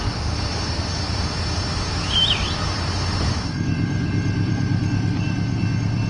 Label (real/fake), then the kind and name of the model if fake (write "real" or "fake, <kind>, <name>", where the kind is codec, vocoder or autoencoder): fake, vocoder, BigVGAN v2